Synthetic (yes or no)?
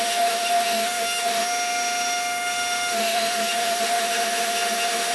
yes